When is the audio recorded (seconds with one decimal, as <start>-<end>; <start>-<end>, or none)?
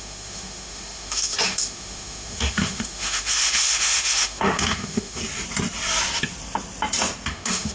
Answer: 5.2-7.3